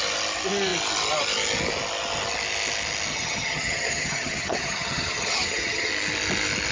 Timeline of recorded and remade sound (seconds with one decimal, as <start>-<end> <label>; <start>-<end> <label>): 0.0-3.1 recorded; 3.1-5.9 remade; 5.9-6.7 recorded